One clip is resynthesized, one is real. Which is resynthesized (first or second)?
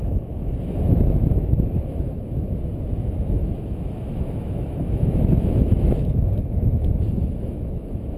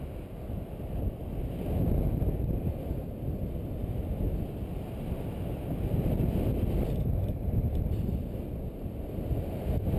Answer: first